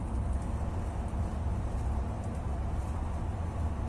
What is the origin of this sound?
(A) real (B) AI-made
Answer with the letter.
A